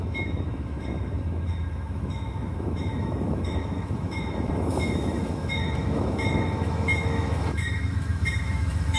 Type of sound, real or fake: fake